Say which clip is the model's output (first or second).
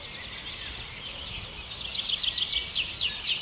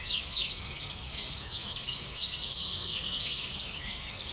second